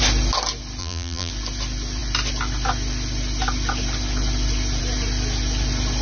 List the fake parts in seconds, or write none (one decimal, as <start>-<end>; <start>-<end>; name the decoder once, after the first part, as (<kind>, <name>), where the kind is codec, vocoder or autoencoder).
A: 0.8-1.3 (vocoder, BigVGAN v2)